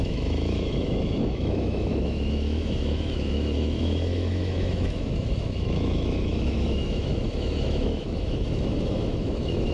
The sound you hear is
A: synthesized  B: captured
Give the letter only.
A